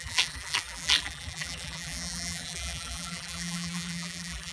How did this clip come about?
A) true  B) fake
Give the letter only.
B